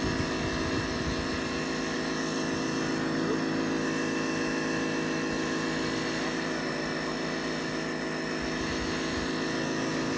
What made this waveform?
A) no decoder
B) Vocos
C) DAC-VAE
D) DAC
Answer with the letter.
A